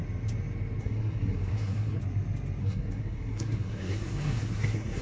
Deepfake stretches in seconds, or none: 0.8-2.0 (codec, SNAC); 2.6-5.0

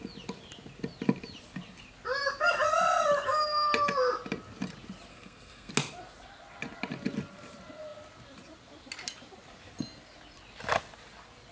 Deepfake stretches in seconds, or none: 5.1-5.7 (codec, SNAC)

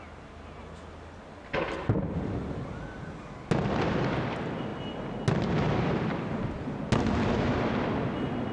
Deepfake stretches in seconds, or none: none

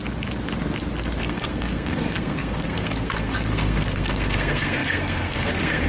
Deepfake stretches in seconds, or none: 1.2-5.9 (codec, SNAC)

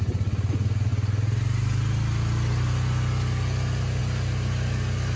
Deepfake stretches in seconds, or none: none

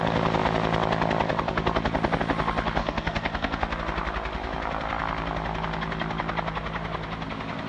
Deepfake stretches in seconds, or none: 2.8-3.8 (codec, SNAC)